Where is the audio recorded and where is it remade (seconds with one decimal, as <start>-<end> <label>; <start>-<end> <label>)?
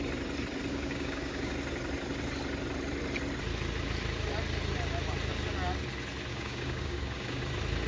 0.0-0.7 recorded; 0.7-1.5 remade; 1.5-6.3 recorded; 6.3-7.4 remade; 7.4-7.9 recorded